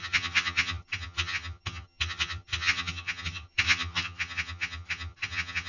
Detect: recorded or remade remade